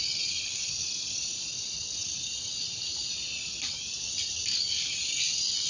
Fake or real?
real